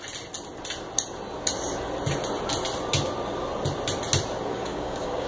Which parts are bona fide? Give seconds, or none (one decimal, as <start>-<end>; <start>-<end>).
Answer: 0.0-4.5